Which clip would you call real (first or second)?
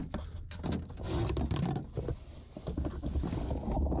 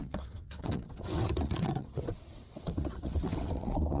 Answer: first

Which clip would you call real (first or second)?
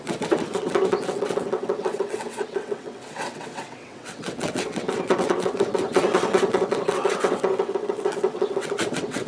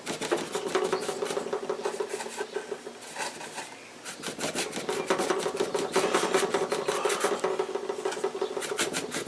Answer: second